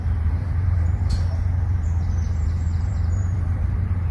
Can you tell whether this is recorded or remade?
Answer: remade